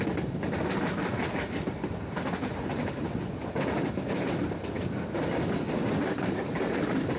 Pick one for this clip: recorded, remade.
recorded